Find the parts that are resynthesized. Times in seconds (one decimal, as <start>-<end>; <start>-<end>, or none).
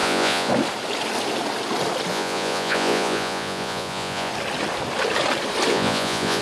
0.0-0.5; 2.1-4.3; 5.7-6.4